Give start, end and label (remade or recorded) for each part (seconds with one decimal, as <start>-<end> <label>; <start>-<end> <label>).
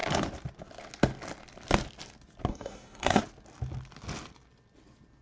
0.0-2.5 recorded; 2.5-3.2 remade; 3.2-5.2 recorded